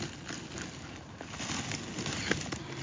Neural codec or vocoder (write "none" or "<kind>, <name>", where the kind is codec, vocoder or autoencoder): none